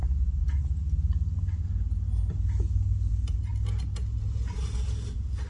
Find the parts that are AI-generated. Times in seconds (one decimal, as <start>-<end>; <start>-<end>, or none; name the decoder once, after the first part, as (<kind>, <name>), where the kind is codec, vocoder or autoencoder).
none